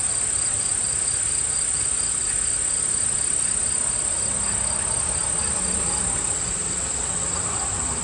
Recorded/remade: recorded